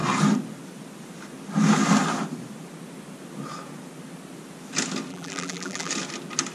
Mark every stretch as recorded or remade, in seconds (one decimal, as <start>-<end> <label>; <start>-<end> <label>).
0.0-5.1 recorded; 5.1-5.9 remade; 5.9-6.5 recorded